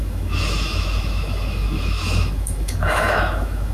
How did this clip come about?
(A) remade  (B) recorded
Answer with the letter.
A